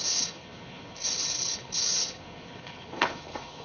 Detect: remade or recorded remade